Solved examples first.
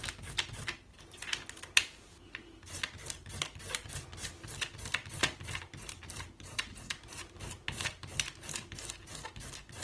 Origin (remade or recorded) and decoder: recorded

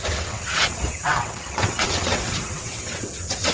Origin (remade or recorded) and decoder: remade, vocoder, WaveNeXt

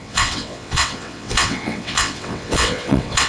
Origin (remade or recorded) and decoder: remade, vocoder, WaveNeXt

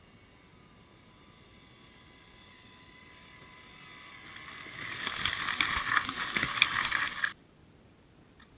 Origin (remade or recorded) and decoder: recorded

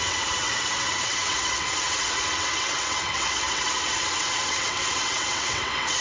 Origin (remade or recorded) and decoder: remade, vocoder, WaveNeXt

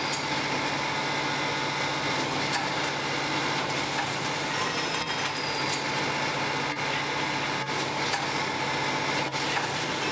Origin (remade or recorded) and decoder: recorded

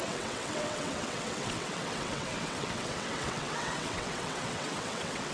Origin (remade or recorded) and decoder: remade, vocoder, WaveNeXt